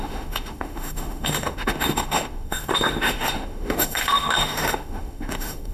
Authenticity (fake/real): fake